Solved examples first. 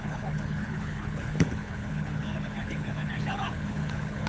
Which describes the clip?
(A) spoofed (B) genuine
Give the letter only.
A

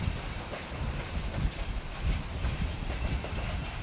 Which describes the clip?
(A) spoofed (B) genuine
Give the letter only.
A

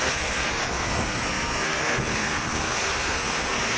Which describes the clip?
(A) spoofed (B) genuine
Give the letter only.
A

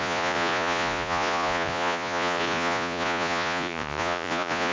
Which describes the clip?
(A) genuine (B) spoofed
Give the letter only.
B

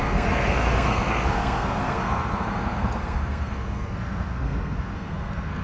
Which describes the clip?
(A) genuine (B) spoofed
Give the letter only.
B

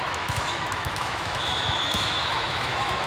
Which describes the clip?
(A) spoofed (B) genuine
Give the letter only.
A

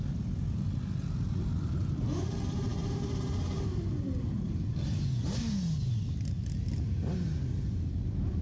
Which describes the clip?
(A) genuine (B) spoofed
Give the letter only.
A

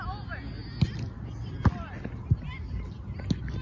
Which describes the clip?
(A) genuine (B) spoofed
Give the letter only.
A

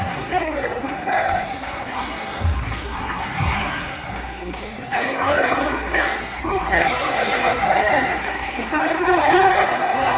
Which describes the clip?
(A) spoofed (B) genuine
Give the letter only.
A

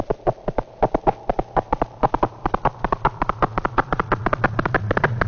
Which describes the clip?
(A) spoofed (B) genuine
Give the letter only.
B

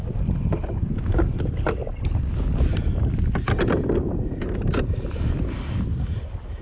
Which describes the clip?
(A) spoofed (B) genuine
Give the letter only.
B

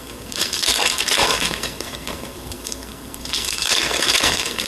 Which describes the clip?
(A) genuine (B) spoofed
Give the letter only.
B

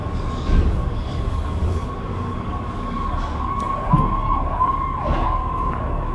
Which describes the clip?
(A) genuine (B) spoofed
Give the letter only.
B